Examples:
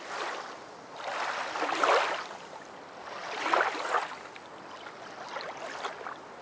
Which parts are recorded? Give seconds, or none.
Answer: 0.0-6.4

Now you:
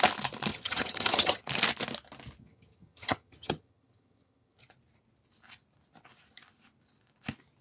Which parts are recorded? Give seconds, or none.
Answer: 0.0-0.5; 1.4-2.4; 4.6-7.6

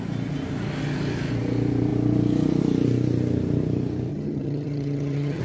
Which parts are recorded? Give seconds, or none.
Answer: 0.0-4.1

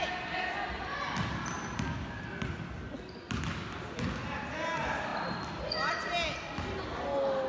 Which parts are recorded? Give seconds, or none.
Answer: 0.0-7.5

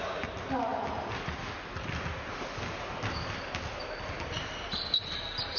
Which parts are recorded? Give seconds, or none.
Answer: 0.0-5.6

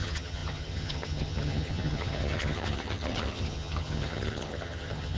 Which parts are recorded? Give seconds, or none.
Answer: none

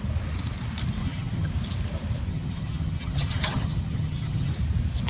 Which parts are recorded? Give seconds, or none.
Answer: 0.0-1.0; 1.5-2.3; 4.5-5.1